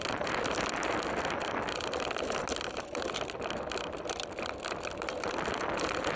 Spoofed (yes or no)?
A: no